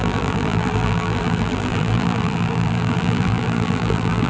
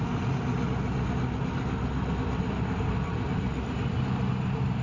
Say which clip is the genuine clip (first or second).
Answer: second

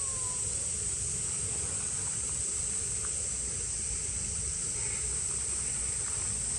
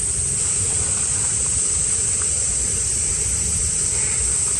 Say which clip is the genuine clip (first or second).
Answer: first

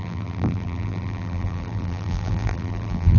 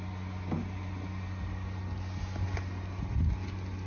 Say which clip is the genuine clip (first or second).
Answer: second